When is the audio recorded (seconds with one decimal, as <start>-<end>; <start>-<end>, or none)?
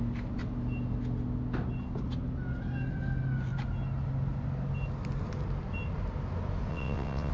0.0-6.7